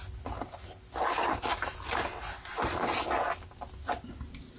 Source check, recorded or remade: recorded